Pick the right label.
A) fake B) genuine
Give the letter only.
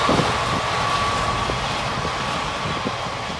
B